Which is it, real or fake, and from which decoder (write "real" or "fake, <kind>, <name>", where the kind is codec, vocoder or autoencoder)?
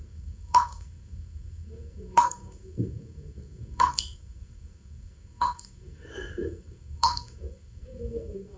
fake, codec, SNAC